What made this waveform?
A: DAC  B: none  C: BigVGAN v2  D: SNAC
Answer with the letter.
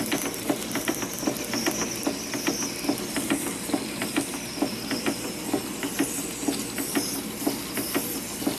B